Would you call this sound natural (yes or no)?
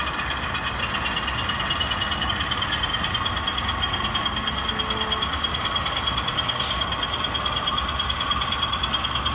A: yes